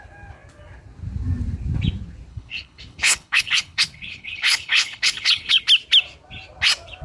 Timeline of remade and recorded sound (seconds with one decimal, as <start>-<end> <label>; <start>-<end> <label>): 0.0-2.3 recorded; 2.3-5.6 remade; 5.6-7.0 recorded